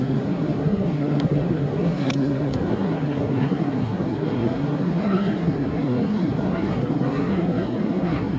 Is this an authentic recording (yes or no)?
no